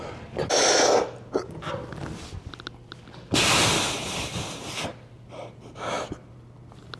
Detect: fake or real real